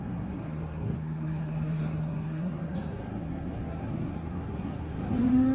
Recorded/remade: remade